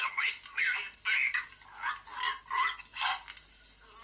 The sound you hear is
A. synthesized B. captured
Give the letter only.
B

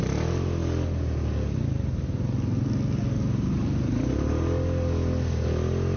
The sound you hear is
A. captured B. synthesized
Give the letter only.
A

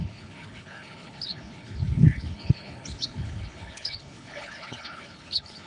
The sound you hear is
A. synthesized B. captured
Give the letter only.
A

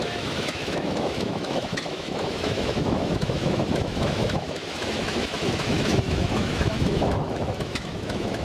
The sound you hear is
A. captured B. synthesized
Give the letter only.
B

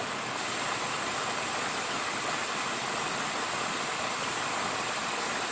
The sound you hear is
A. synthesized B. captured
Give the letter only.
B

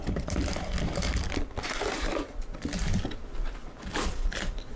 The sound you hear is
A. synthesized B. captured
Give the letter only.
B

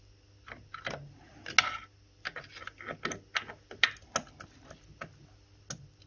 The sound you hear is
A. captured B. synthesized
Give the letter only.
A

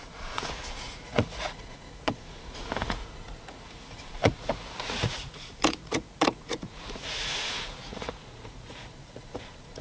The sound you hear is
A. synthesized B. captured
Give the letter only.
A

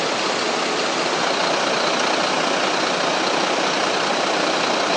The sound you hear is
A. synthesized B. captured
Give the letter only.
B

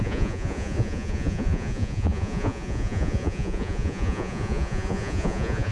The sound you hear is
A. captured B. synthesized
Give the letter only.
B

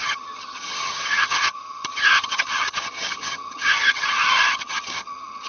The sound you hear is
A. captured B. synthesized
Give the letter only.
B